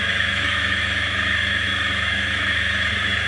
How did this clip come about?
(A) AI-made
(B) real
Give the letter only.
A